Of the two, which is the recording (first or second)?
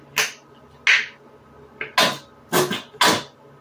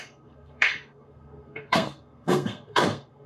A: first